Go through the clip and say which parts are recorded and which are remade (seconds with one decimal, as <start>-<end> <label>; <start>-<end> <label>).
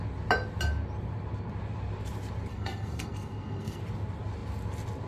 0.0-2.5 recorded; 2.5-3.8 remade; 3.8-5.1 recorded